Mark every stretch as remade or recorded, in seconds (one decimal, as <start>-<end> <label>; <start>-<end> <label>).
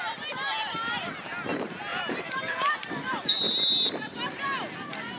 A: 0.0-1.9 recorded; 1.9-5.2 remade